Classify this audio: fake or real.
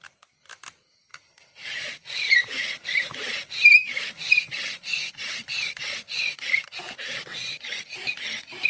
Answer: real